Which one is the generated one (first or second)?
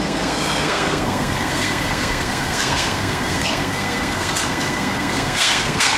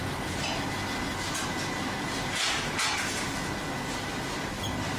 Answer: first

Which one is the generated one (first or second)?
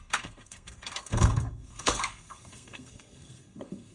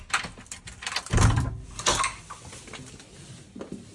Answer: first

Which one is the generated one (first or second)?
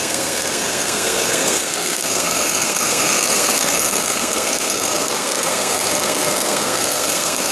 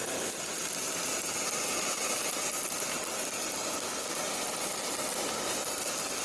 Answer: first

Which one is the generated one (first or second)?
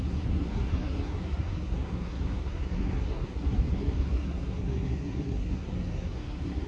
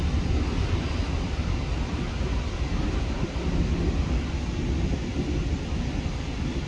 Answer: first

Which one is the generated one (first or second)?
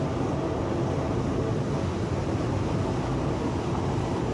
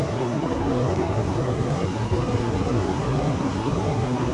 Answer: second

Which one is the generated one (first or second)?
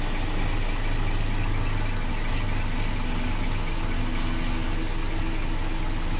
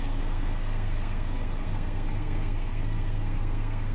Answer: second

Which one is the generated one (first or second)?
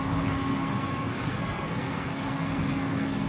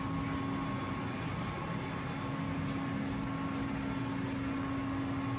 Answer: first